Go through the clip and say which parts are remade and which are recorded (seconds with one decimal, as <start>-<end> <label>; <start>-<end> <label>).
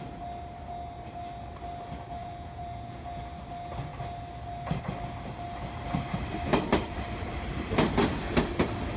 0.0-2.2 recorded; 2.2-3.2 remade; 3.2-9.0 recorded